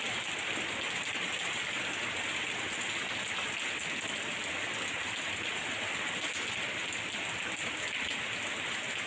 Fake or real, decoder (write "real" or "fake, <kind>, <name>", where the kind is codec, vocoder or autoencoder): real